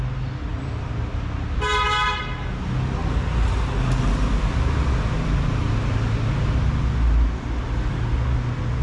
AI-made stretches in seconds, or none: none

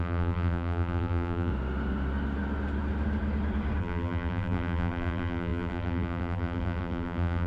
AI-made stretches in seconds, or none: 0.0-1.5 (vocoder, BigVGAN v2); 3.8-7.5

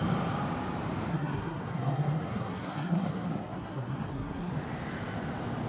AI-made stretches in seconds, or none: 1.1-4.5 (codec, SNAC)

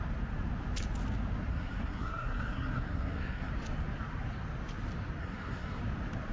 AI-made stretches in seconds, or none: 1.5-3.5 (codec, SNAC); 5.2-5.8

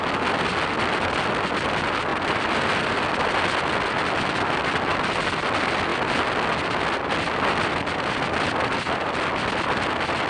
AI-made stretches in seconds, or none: 2.1-2.9 (vocoder, BigVGAN v2)

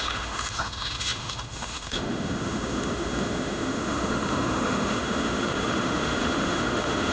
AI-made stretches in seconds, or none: 0.0-7.1 (autoencoder, DAC-VAE)